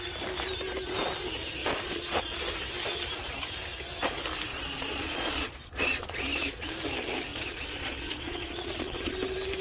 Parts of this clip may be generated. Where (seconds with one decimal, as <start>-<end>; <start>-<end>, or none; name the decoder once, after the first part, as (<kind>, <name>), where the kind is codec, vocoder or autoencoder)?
1.6-2.4 (vocoder, Vocos); 4.5-6.7; 7.3-9.1